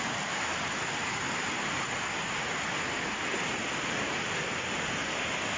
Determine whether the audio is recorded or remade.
recorded